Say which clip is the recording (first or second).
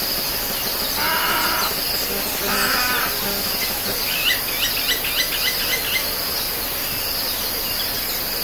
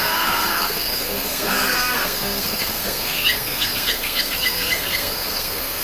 first